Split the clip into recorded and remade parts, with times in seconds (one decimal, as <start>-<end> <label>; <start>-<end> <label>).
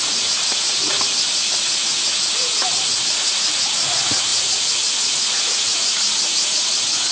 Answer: 0.0-7.1 remade